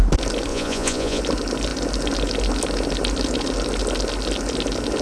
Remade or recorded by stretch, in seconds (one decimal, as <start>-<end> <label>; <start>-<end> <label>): 0.0-0.5 recorded; 0.5-1.2 remade; 1.2-5.0 recorded